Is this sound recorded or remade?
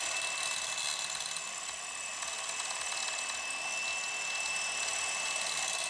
recorded